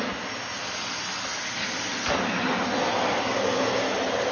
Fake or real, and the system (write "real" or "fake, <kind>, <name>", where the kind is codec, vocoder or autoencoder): real